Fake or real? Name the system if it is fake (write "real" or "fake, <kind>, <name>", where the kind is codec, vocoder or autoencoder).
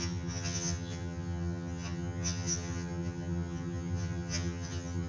fake, vocoder, HiFi-GAN